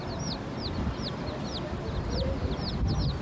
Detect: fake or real real